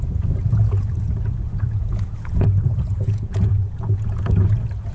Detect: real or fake fake